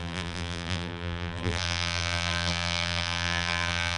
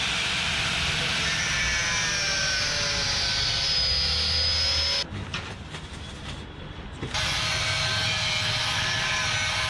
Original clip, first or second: second